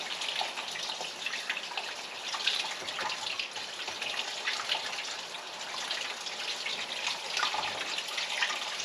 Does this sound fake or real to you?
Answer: real